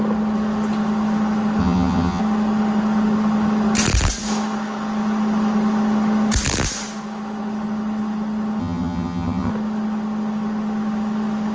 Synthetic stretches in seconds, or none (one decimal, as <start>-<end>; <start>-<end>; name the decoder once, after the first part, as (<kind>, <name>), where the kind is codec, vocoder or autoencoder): 1.6-2.2 (vocoder, HiFi-GAN); 8.6-9.5